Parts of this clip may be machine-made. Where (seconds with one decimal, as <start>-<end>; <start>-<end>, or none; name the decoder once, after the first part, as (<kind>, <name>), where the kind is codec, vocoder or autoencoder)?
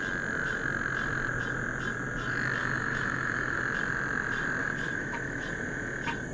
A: 2.6-3.6 (autoencoder, DAC-VAE); 4.6-5.5